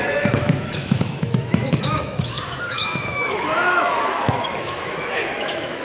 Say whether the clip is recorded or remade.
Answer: remade